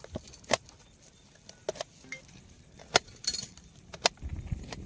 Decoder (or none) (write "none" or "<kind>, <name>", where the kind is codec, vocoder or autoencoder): none